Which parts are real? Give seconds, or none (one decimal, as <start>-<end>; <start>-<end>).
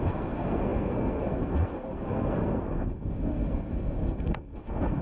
none